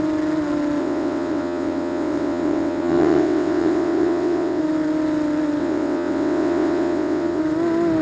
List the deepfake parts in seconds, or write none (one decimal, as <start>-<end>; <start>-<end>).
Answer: 0.8-4.6; 5.6-7.4